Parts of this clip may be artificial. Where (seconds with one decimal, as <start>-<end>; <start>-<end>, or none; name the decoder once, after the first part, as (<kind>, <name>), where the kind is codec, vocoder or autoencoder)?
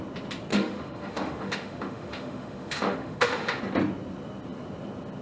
0.5-3.6 (autoencoder, DAC-VAE)